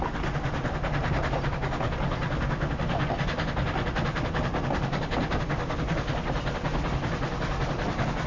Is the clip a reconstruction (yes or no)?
no